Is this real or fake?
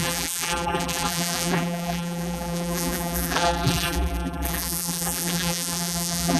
fake